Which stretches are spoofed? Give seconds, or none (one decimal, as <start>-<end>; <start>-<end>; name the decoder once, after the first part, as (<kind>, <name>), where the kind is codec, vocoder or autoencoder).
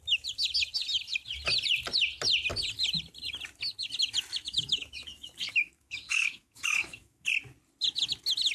4.3-7.3 (autoencoder, DAC-VAE)